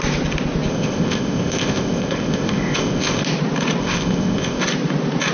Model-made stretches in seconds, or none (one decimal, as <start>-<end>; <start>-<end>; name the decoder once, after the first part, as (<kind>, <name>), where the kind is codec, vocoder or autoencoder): 0.7-3.2 (codec, ZipCodec); 3.8-4.6